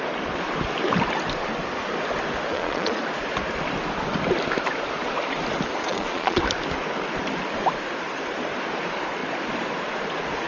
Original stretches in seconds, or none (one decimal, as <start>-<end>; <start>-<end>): 0.0-2.5; 3.0-5.8; 6.4-10.5